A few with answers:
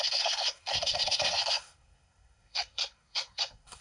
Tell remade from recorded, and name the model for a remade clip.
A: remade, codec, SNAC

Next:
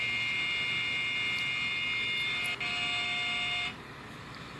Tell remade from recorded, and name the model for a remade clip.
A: recorded